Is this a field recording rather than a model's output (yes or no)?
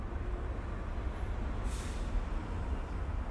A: yes